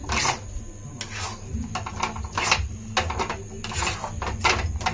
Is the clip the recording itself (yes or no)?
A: yes